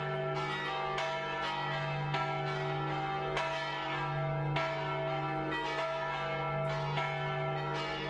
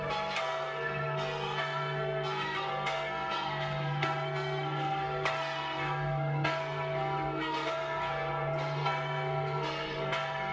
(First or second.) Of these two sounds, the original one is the first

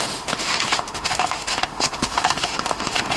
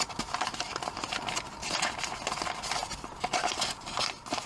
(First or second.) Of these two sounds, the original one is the second